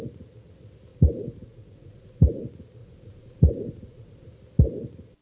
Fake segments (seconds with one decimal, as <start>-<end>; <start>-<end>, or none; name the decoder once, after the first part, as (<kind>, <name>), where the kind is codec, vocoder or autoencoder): 0.9-2.4 (vocoder, Vocos); 2.8-4.3